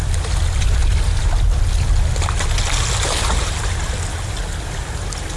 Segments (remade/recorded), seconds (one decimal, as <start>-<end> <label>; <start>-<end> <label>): 0.0-4.8 recorded; 4.8-5.4 remade